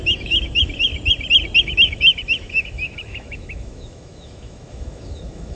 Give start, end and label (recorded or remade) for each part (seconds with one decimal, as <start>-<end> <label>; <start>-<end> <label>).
0.0-0.9 remade; 0.9-1.6 recorded; 1.6-5.6 remade